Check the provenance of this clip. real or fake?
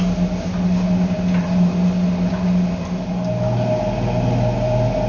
real